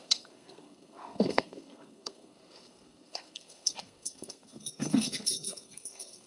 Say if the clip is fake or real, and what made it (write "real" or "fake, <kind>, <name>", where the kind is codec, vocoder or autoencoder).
fake, codec, SNAC